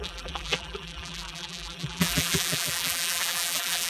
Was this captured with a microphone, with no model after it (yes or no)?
no